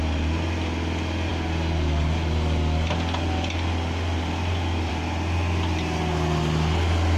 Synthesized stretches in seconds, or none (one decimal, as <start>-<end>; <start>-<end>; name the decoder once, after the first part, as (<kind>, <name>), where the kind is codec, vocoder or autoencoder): none